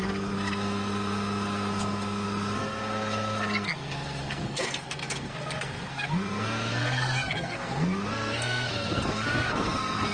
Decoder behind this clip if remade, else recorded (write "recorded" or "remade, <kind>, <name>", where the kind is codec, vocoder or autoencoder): remade, codec, SNAC